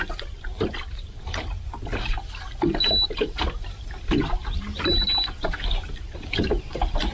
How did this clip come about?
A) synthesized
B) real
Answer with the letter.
B